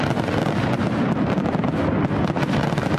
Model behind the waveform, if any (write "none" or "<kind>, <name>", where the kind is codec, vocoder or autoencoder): none